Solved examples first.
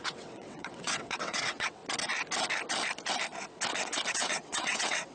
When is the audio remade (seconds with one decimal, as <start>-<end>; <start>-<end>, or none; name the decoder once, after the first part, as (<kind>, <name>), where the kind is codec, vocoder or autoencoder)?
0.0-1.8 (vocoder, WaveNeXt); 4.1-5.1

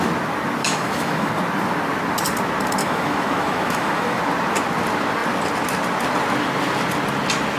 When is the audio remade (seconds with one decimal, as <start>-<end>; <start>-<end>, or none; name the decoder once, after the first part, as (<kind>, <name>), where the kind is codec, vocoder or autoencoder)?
0.6-1.3 (autoencoder, DAC-VAE); 2.8-4.2

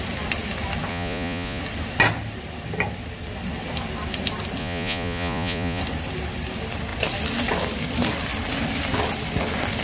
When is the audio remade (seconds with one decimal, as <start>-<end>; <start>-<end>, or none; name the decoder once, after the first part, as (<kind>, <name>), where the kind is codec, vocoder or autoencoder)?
0.9-1.6 (vocoder, Vocos); 4.6-5.8

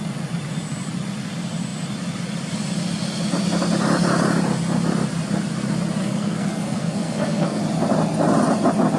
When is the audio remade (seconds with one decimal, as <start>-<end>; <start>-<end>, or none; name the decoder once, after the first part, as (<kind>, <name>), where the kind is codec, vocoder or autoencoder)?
6.0-7.6 (codec, SNAC)